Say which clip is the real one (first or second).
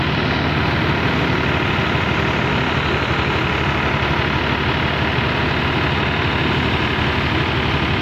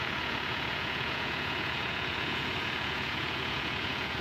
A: first